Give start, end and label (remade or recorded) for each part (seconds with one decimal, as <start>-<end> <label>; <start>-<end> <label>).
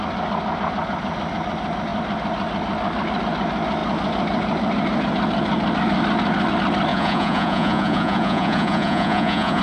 0.0-6.9 recorded; 6.9-9.6 remade